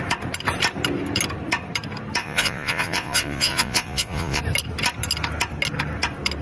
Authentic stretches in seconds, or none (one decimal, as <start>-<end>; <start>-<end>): 0.0-2.2; 4.4-6.4